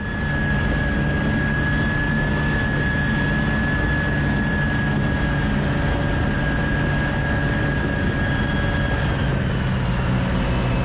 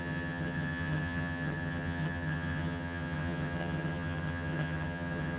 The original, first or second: first